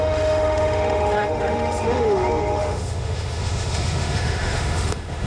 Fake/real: fake